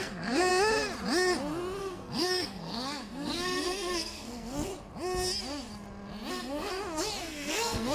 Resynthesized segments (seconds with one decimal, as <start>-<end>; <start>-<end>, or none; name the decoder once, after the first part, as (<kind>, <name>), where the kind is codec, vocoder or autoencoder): 0.0-0.5 (codec, SNAC); 1.8-4.7; 6.3-6.7; 7.2-7.9

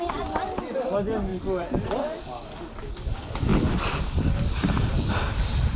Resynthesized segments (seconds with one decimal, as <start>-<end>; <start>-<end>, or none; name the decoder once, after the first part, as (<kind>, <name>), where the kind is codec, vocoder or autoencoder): 1.3-2.2 (vocoder, BigVGAN v2); 3.5-5.8

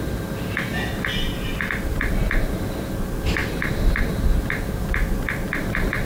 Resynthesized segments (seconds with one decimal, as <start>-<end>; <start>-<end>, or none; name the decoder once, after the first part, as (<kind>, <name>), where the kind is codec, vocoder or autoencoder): none

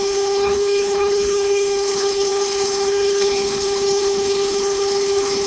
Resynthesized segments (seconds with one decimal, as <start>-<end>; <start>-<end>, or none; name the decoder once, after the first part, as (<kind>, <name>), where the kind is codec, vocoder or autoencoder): 0.0-5.5 (codec, HILCodec)